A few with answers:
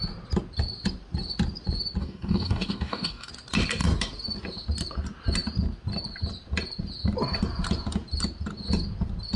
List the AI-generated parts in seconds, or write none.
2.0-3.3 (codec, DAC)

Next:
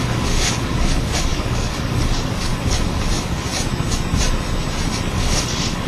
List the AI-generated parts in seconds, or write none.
0.0-3.5 (codec, DAC); 5.1-5.9

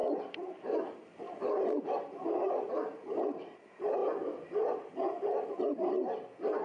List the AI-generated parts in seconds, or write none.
none

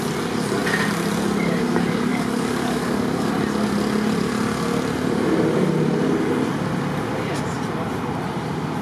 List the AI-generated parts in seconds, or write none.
2.1-3.3 (codec, DAC)